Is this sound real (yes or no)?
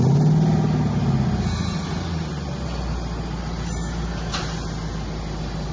yes